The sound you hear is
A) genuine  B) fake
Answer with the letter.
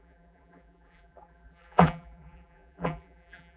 B